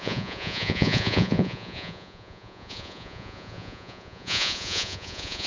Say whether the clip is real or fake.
fake